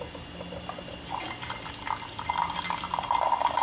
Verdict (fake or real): real